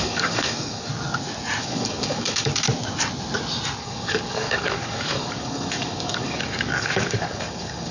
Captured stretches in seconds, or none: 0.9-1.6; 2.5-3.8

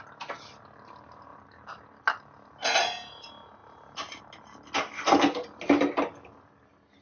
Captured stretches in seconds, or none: 0.0-7.0

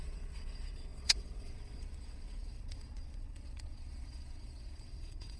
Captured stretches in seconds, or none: none

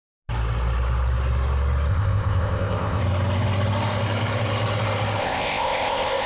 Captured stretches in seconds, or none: 0.0-1.9; 3.0-5.2

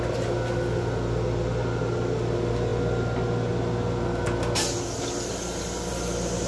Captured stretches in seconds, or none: 0.0-6.5